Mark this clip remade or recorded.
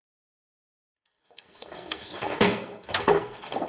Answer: remade